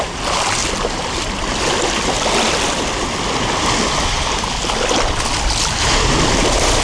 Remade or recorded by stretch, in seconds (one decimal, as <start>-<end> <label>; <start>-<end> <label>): 0.0-6.8 recorded